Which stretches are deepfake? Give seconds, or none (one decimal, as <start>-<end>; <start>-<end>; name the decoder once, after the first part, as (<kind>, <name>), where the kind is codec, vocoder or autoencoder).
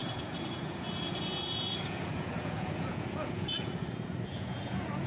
0.0-5.1 (vocoder, Vocos)